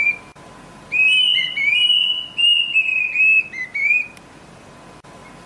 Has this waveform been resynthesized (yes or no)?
no